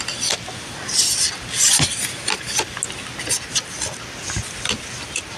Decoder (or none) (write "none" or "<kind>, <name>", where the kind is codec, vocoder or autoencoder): none